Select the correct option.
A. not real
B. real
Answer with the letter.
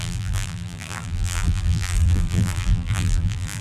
A